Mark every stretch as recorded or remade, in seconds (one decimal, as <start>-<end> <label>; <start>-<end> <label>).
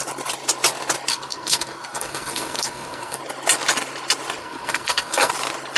0.0-1.1 recorded; 1.1-3.2 remade; 3.2-4.4 recorded; 4.4-5.3 remade; 5.3-5.8 recorded